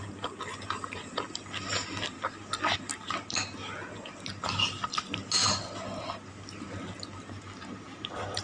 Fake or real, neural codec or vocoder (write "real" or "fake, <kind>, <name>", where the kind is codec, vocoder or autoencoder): real